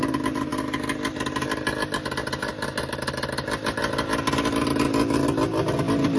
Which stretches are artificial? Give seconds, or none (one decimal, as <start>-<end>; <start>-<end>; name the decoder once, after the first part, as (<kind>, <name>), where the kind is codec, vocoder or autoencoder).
none